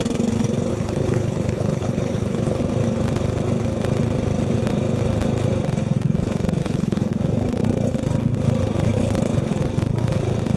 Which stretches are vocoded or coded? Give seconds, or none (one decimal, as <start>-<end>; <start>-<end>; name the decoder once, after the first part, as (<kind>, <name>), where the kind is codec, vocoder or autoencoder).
0.7-2.6 (codec, HILCodec); 6.6-7.1